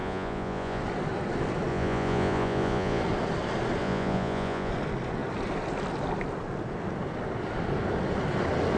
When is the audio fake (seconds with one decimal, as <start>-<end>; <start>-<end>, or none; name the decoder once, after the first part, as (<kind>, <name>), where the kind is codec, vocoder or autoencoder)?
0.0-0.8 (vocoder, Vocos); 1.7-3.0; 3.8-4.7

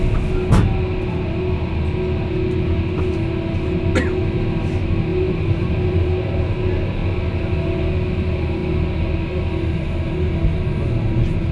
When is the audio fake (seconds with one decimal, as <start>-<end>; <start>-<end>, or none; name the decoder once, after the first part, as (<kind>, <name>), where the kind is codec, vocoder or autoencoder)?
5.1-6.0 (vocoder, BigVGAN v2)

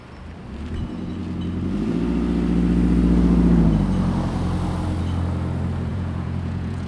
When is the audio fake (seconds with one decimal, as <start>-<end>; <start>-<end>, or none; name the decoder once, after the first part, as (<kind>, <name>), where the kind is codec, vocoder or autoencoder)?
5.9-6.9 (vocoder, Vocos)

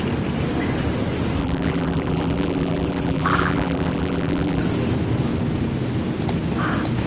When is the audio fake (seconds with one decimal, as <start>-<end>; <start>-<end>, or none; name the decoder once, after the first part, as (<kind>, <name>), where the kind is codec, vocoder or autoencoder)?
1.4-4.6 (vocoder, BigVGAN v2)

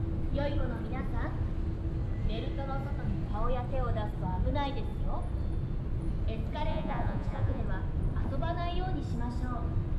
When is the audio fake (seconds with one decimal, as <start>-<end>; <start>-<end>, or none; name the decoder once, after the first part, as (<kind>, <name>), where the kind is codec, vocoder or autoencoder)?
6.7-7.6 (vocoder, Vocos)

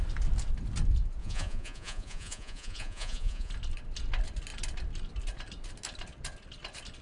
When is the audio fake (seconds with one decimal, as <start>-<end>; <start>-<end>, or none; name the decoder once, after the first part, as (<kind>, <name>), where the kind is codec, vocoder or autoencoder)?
1.2-3.5 (vocoder, Vocos)